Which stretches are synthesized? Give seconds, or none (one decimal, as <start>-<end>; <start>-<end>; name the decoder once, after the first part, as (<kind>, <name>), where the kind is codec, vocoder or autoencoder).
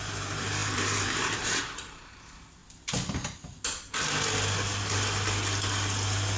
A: 0.0-2.6 (vocoder, BigVGAN v2)